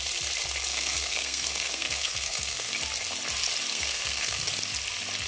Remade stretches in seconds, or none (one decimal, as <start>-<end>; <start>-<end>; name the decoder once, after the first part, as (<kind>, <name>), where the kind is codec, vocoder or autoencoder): 0.7-2.7 (codec, SNAC); 3.7-4.5